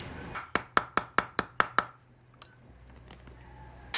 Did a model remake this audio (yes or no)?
no